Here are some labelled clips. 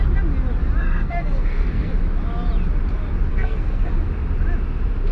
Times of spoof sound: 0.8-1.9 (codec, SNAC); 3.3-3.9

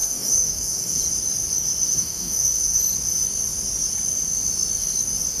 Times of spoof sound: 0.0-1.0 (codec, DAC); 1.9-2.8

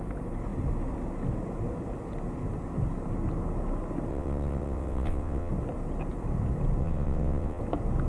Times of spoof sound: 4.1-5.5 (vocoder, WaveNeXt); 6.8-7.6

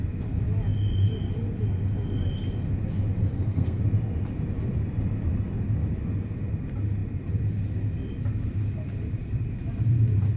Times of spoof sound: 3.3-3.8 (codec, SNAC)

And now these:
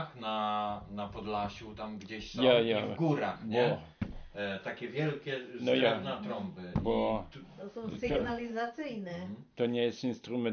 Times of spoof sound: 7.7-8.7 (vocoder, Vocos)

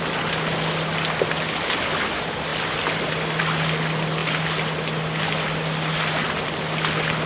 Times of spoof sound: none

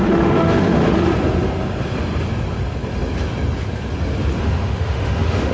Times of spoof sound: 0.0-1.1 (autoencoder, DAC-VAE); 4.4-5.5